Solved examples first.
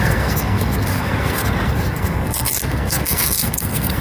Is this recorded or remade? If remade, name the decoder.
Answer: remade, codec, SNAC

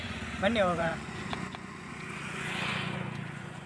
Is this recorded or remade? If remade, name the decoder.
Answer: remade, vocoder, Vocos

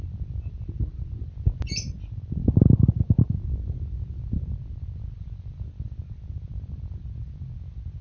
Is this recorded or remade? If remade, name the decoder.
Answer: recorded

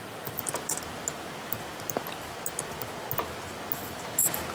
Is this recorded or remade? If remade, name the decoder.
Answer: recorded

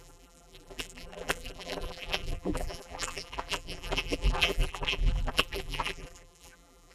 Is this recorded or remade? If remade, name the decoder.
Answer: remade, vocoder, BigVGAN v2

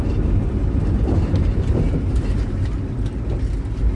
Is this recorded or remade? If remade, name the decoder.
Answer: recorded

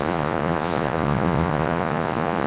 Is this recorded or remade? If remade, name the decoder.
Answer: remade, vocoder, Vocos